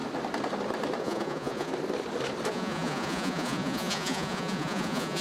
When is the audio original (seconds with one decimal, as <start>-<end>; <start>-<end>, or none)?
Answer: 0.0-1.0; 1.7-2.5

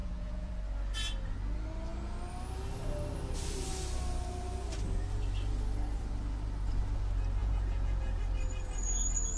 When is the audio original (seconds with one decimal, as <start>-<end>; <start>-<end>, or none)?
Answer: 0.5-7.4; 8.2-9.4

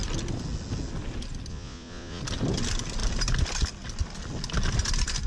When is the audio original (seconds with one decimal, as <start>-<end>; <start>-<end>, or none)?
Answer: 0.0-1.5; 2.2-5.3

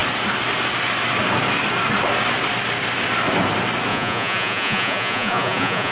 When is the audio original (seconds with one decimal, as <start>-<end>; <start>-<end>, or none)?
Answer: 0.0-3.9